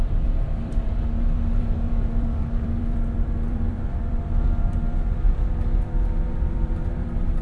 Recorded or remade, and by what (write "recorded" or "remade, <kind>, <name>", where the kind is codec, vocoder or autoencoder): remade, vocoder, BigVGAN v2